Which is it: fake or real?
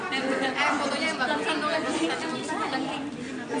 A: real